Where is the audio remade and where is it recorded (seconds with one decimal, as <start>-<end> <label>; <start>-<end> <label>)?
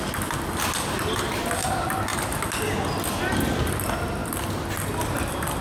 0.0-5.6 recorded